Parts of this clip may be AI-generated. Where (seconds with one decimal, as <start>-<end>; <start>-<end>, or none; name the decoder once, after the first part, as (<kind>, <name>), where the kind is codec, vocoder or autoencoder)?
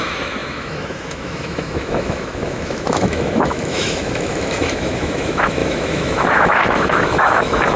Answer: 0.0-7.8 (autoencoder, DAC-VAE)